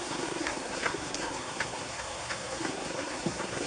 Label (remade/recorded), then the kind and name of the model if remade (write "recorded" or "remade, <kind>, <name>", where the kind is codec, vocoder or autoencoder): remade, codec, SNAC